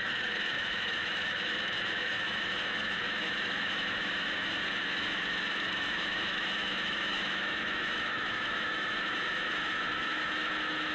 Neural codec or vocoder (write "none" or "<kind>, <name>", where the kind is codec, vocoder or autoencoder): autoencoder, DAC-VAE